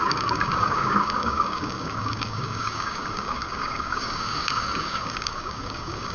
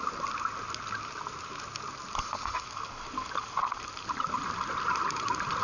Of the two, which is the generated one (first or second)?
first